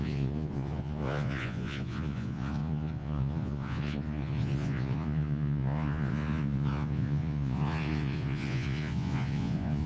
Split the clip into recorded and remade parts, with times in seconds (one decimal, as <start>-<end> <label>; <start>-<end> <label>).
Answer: 0.0-9.9 remade

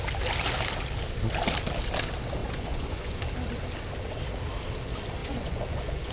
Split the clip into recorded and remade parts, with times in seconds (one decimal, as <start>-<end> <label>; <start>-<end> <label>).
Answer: 0.0-2.4 recorded; 2.4-3.2 remade; 3.2-5.2 recorded; 5.2-6.1 remade

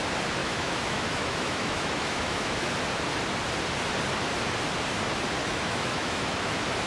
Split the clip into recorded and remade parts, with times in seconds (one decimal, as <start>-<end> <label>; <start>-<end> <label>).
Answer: 0.0-0.4 recorded; 0.4-2.7 remade; 2.7-5.4 recorded; 5.4-6.5 remade; 6.5-6.9 recorded

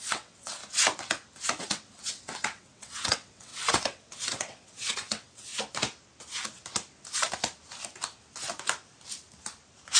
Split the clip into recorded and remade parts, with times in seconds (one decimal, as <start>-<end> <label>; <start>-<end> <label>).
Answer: 0.0-0.6 remade; 0.6-1.6 recorded; 1.6-5.5 remade; 5.5-10.0 recorded